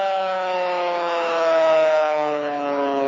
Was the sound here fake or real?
fake